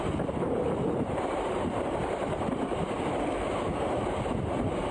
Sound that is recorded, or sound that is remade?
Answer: remade